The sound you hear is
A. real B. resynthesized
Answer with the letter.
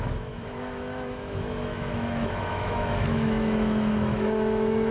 B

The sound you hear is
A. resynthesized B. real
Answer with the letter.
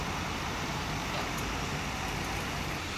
A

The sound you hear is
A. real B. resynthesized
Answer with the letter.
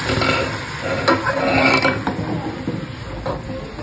A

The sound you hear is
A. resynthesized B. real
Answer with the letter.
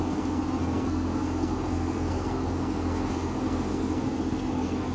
A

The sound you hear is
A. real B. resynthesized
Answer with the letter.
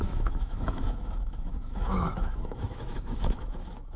B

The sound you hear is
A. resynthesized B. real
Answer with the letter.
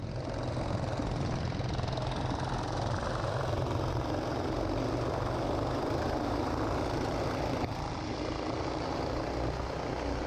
B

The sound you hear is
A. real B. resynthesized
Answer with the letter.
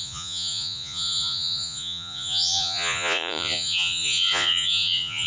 B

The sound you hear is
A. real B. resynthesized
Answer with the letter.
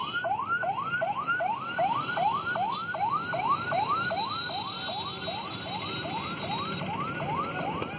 A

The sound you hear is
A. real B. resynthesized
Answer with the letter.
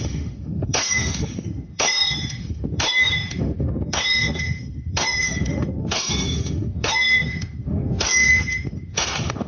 B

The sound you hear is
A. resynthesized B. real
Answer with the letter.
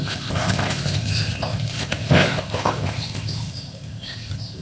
A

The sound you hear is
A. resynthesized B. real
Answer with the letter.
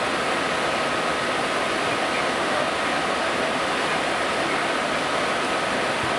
B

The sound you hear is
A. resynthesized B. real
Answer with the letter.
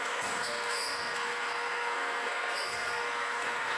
A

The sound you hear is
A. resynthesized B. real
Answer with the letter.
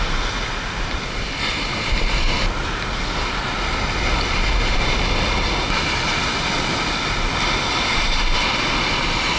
B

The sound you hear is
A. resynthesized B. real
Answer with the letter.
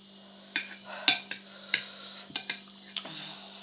B